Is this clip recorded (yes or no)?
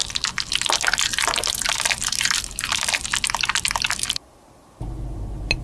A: yes